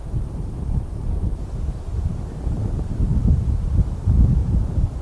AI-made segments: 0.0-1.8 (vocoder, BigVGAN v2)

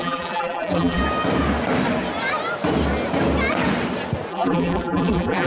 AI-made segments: 0.0-1.0 (vocoder, BigVGAN v2); 4.3-5.5